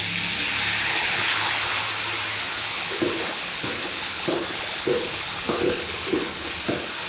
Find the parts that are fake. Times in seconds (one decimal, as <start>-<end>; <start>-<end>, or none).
0.9-1.8; 2.5-6.5